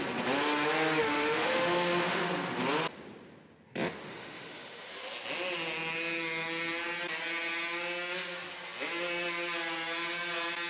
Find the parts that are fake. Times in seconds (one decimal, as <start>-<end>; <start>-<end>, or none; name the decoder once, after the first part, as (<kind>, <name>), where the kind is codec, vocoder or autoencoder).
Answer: 1.0-2.2 (autoencoder, DAC-VAE); 4.1-4.9